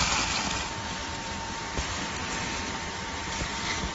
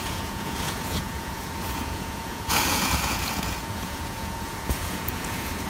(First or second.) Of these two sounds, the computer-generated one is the second